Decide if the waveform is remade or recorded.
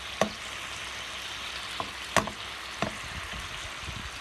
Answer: recorded